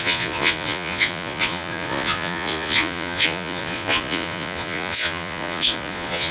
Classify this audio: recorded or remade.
remade